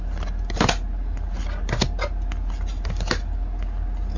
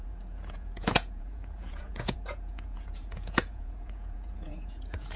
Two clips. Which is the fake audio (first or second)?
second